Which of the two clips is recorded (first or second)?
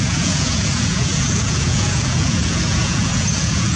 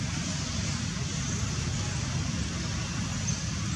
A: second